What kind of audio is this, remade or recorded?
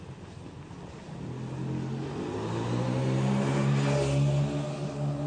recorded